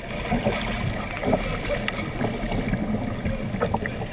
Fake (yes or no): no